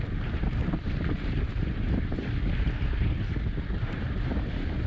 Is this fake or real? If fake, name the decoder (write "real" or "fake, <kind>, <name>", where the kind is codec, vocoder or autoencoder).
real